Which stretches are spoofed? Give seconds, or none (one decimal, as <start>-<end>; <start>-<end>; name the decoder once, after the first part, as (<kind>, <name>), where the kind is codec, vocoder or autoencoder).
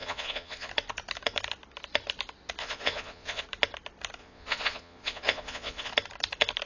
0.0-0.7 (vocoder, Vocos); 2.6-3.4; 4.2-5.9